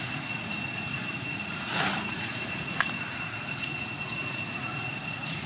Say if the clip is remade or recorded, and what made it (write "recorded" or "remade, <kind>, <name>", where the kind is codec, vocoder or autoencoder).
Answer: remade, vocoder, Vocos